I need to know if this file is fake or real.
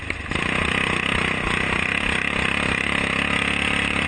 real